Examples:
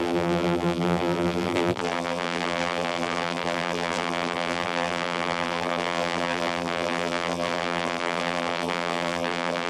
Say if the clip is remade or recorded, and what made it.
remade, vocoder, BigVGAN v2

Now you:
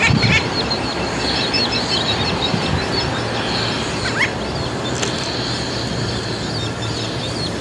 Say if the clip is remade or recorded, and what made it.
recorded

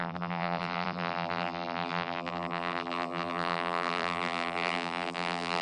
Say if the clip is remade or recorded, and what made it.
remade, vocoder, BigVGAN v2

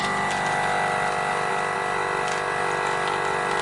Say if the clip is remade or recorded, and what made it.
recorded